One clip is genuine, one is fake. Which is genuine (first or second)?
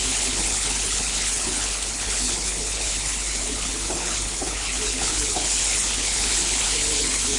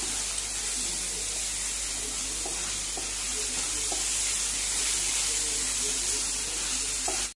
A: second